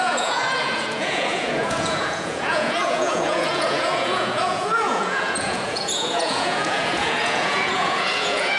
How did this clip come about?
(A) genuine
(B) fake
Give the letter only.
B